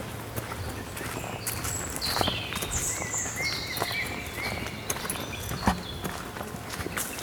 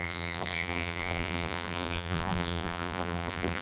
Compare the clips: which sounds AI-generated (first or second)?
second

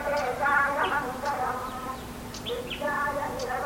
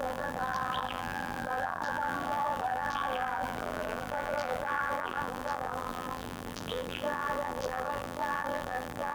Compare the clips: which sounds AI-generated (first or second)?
second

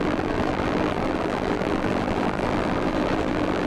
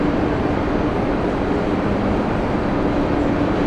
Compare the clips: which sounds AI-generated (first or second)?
first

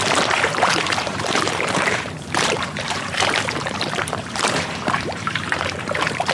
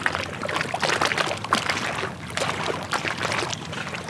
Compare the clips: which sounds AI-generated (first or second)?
first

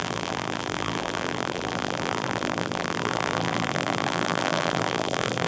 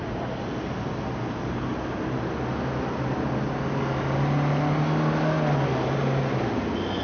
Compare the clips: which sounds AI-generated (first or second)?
first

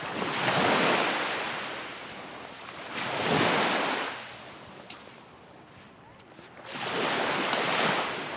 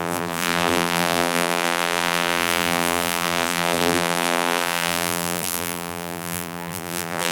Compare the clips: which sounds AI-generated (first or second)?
second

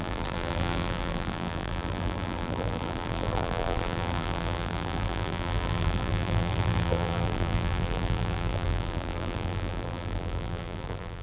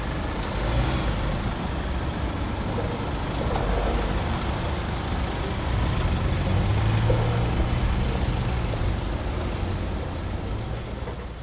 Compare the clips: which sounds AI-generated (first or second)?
first